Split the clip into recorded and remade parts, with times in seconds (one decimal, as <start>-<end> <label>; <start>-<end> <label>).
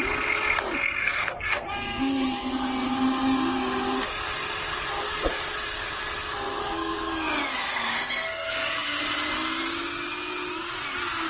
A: 0.0-1.0 recorded; 1.0-2.0 remade; 2.0-6.6 recorded; 6.6-9.0 remade; 9.0-11.3 recorded